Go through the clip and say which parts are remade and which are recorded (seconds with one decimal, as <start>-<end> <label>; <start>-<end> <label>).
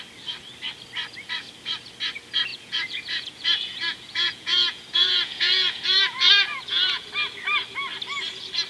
0.0-2.5 recorded; 2.5-7.1 remade; 7.1-8.7 recorded